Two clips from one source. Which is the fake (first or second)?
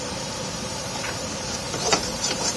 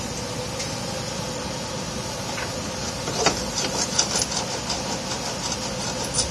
first